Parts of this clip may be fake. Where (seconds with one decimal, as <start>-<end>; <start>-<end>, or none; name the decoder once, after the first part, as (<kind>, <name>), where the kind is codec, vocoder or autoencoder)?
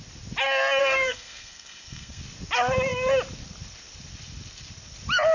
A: 0.8-2.2 (codec, SNAC)